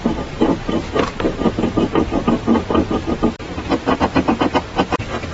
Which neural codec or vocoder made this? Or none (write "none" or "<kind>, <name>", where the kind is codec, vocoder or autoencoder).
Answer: none